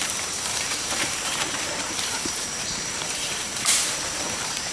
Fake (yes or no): yes